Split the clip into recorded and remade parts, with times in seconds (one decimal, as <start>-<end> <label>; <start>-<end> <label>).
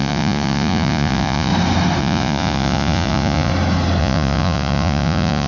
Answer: 0.0-1.5 remade; 1.5-2.0 recorded; 2.0-3.5 remade; 3.5-4.0 recorded; 4.0-5.5 remade